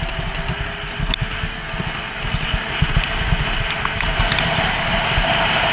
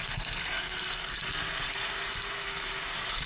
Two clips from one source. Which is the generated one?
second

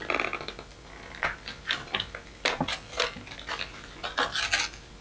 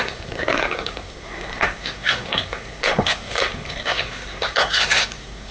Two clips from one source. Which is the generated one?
second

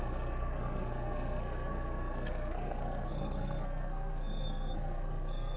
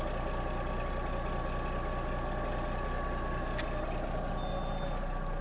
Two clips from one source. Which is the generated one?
first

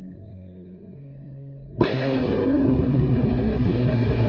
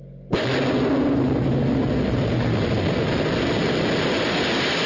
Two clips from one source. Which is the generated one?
first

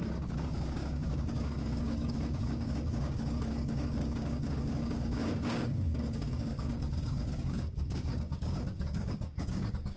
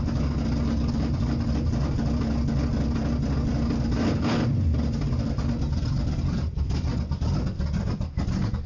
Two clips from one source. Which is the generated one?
first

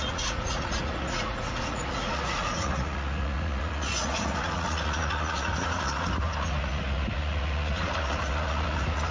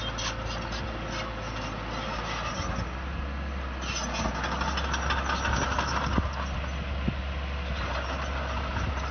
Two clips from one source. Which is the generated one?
first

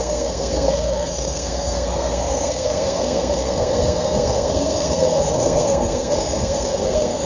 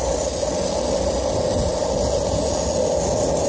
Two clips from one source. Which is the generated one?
first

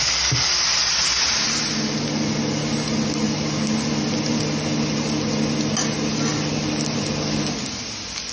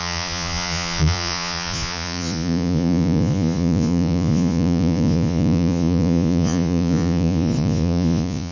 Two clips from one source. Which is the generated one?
second